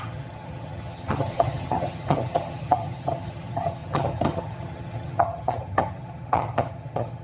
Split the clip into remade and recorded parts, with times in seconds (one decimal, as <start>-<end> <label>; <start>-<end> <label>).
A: 0.0-7.2 remade